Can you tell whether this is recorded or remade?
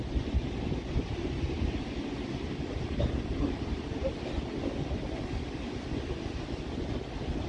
recorded